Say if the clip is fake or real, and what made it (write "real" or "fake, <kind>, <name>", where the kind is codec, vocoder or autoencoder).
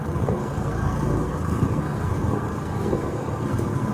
fake, codec, SNAC